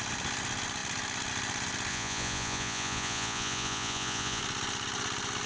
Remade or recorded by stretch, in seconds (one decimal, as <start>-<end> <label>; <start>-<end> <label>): 0.0-1.9 recorded; 1.9-4.4 remade; 4.4-5.5 recorded